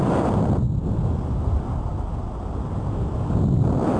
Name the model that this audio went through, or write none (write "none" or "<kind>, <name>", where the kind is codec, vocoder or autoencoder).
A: none